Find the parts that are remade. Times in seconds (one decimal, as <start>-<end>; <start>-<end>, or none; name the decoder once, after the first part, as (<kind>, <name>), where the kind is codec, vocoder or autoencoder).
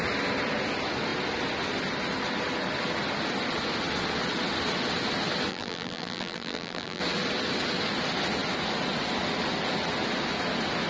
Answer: 5.5-7.0 (vocoder, BigVGAN v2)